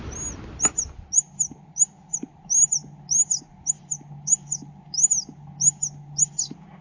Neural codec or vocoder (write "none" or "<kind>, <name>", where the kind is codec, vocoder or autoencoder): none